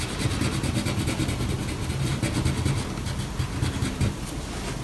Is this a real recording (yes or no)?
yes